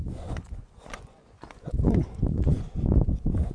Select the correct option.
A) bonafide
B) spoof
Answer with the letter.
B